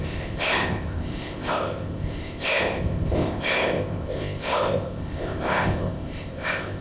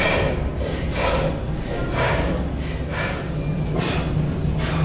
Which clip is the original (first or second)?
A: second